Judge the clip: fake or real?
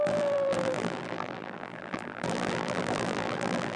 fake